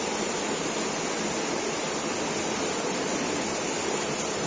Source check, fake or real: real